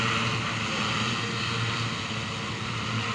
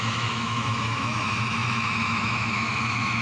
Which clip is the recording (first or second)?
first